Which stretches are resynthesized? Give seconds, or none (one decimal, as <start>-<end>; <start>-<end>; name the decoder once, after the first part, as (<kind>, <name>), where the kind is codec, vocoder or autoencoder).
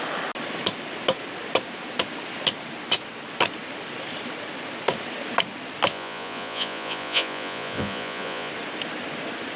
5.9-8.5 (vocoder, Vocos)